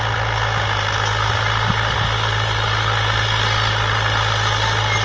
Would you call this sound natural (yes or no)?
yes